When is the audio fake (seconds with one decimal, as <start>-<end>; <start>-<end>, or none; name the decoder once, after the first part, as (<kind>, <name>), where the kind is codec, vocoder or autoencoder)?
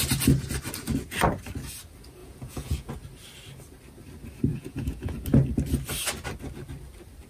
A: 2.2-2.9 (vocoder, Vocos); 4.5-5.1